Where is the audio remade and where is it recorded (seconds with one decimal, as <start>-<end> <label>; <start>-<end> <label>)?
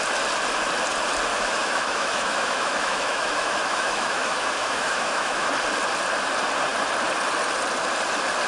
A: 0.0-1.3 recorded; 1.3-5.5 remade; 5.5-8.5 recorded